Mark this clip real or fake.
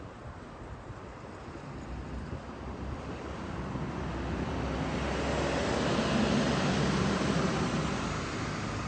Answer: real